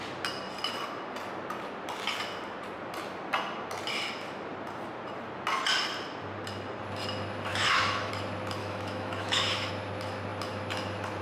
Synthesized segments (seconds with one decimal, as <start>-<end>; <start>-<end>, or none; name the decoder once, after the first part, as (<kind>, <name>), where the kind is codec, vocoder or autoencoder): 7.5-8.1 (autoencoder, DAC-VAE); 8.6-9.7